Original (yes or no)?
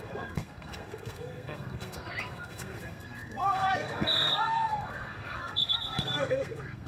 no